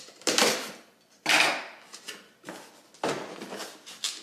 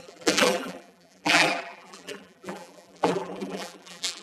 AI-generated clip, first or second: second